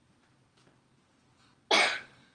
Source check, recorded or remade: recorded